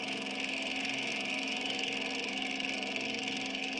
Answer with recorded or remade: remade